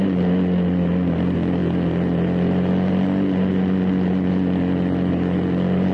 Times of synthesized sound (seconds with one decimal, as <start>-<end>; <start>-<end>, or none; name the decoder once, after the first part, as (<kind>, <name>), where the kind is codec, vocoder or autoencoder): none